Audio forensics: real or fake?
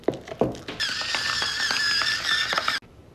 real